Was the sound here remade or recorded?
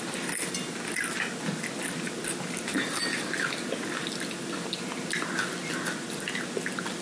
recorded